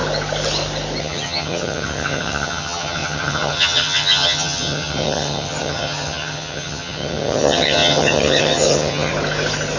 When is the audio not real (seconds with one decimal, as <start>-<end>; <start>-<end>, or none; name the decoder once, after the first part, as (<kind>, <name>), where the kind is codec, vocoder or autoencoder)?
1.0-9.1 (vocoder, HiFi-GAN)